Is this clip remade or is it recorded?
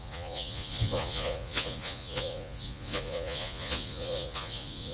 remade